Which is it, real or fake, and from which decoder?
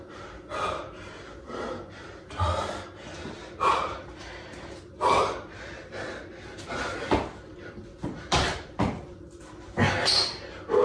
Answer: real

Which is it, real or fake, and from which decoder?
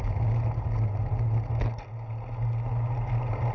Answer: real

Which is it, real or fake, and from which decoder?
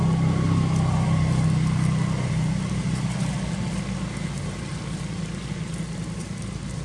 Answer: real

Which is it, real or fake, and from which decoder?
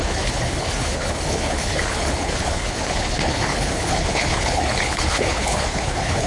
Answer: fake, codec, HILCodec